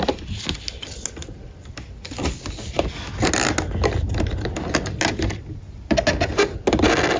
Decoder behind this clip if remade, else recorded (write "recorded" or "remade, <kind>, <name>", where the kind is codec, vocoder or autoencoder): recorded